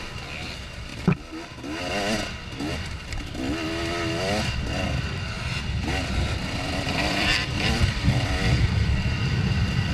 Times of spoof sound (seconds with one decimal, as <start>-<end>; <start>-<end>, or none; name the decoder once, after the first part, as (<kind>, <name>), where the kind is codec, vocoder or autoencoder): 0.0-0.9 (vocoder, BigVGAN v2); 5.3-9.9